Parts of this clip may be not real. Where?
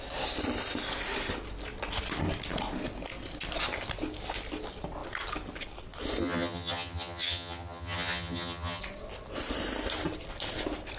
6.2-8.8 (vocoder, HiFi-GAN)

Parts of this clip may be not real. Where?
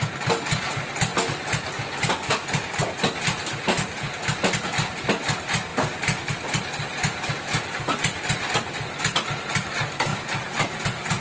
none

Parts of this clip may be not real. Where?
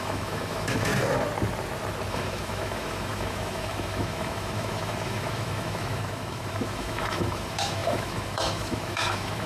0.0-0.9 (autoencoder, DAC-VAE); 2.1-9.5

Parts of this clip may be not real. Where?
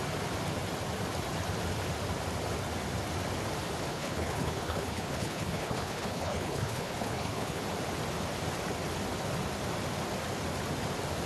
3.9-7.6 (codec, HILCodec)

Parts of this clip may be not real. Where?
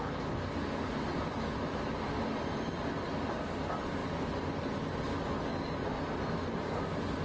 none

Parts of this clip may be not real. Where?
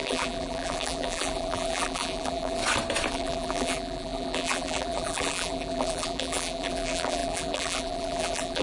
0.0-2.6 (vocoder, BigVGAN v2); 3.1-8.6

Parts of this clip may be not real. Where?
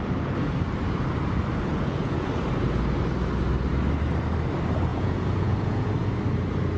1.7-2.3 (vocoder, Vocos); 4.9-5.9